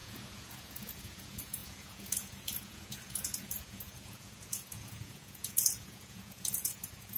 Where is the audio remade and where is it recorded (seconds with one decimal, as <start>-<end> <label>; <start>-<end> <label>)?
0.0-7.2 remade